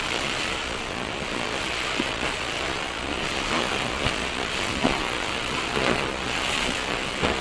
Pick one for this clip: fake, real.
fake